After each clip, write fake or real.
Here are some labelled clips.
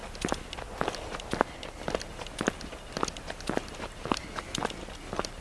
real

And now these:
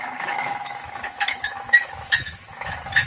fake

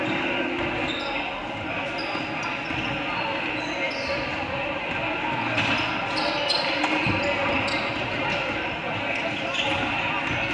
real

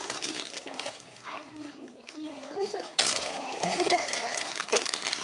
fake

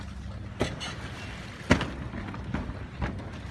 real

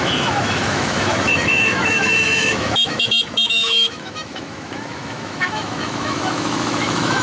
fake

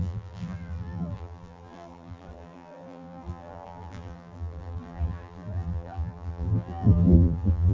fake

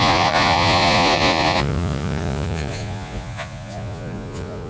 fake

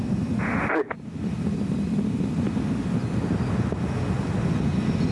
real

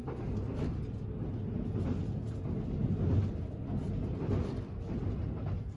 real